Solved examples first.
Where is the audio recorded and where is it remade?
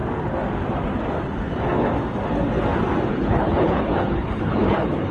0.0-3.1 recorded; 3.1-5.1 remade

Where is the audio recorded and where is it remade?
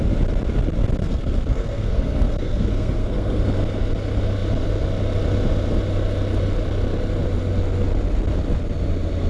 0.0-1.0 recorded; 1.0-3.4 remade; 3.4-9.3 recorded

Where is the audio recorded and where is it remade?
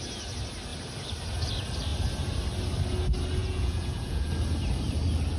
0.0-3.4 recorded; 3.4-4.3 remade; 4.3-5.4 recorded